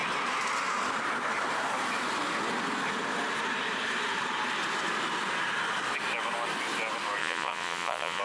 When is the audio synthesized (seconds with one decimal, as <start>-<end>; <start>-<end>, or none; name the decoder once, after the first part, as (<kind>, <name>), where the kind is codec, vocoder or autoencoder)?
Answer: 7.2-8.2 (vocoder, Vocos)